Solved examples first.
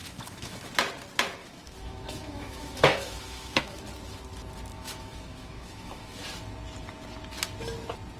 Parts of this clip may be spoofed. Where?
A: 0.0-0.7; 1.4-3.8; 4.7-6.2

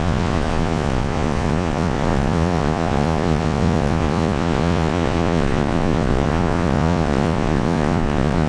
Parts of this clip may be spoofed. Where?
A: 0.0-8.5

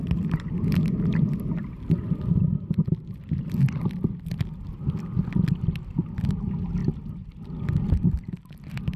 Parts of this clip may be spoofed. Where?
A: none

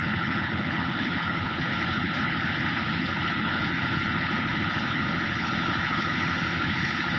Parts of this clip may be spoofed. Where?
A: 0.0-7.2

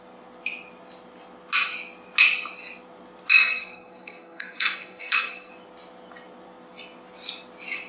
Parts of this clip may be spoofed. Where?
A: 3.3-5.5

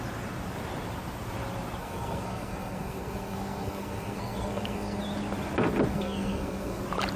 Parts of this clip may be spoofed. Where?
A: 1.8-5.0; 5.9-6.8

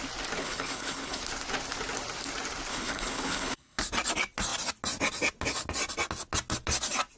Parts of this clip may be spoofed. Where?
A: 0.4-1.2; 2.7-3.8